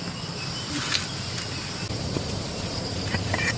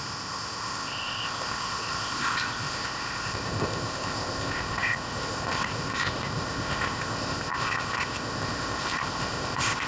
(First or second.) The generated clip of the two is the second